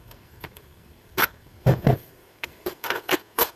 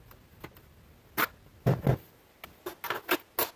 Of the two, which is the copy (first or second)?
first